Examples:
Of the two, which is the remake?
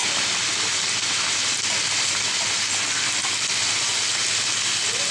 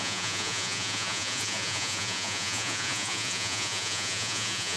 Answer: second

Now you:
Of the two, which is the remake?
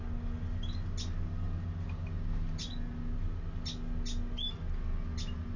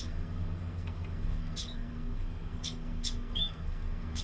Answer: second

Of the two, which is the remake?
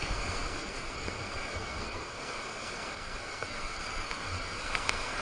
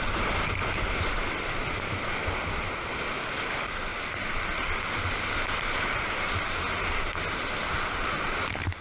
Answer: first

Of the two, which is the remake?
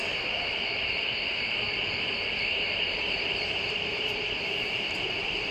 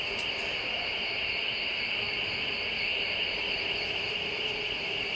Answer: first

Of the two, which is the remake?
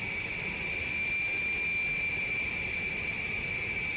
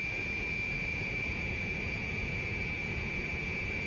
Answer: second